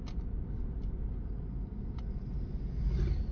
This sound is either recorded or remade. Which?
recorded